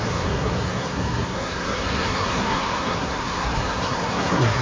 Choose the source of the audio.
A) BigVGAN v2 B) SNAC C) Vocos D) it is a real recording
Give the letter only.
B